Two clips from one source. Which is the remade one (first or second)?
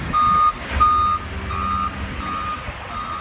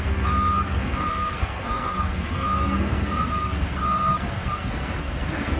second